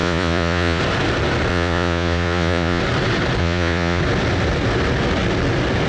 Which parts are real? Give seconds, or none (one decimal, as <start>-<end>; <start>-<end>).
0.8-1.5; 2.8-3.4; 4.0-5.9